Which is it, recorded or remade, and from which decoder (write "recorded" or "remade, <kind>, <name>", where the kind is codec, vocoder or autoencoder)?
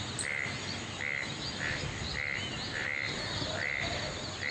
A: recorded